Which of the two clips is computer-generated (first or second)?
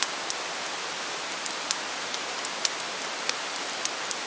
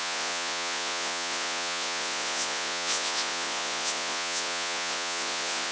second